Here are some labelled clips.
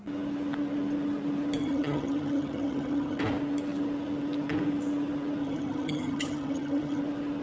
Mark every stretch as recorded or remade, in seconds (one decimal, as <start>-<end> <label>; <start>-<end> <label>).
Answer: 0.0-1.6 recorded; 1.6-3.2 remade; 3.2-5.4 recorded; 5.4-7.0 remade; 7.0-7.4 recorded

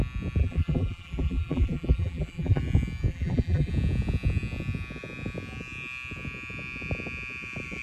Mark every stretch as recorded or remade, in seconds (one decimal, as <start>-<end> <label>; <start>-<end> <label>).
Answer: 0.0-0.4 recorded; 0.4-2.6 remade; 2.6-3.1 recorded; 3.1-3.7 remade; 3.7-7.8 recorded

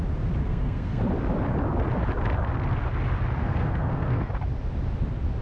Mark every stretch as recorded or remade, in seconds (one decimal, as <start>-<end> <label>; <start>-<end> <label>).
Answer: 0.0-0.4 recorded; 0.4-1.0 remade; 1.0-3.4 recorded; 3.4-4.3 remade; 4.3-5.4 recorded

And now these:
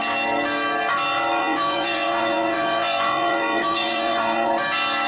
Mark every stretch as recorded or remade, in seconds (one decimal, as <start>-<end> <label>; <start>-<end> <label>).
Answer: 0.0-1.4 recorded; 1.4-4.5 remade; 4.5-5.1 recorded

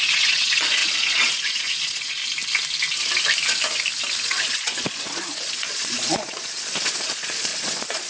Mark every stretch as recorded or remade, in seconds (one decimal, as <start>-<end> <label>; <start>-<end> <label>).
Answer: 0.0-2.2 remade; 2.2-4.2 recorded; 4.2-8.1 remade

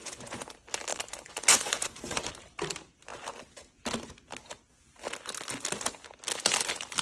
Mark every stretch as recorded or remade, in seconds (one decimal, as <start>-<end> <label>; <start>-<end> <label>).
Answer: 0.0-0.5 remade; 0.5-0.9 recorded; 0.9-2.3 remade; 2.3-7.0 recorded